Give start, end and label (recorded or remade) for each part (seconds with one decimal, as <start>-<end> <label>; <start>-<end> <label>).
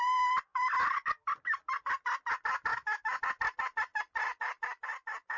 0.0-2.7 recorded; 2.7-3.2 remade; 3.2-5.4 recorded